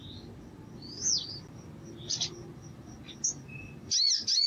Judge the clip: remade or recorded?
recorded